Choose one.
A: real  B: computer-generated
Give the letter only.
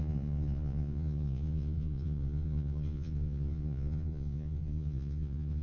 B